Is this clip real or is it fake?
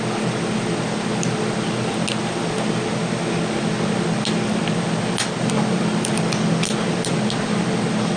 real